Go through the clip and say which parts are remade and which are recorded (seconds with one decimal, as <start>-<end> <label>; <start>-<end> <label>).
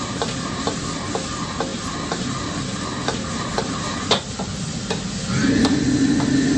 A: 0.0-6.6 recorded